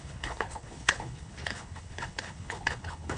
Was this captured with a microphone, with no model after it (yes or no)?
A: no